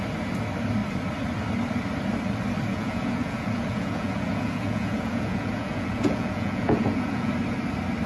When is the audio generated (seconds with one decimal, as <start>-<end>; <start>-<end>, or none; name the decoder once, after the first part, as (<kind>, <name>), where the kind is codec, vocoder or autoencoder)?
2.7-7.3 (vocoder, Vocos)